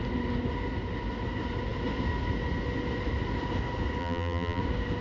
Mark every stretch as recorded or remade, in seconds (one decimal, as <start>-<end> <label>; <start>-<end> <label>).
0.0-4.0 recorded; 4.0-4.6 remade; 4.6-5.0 recorded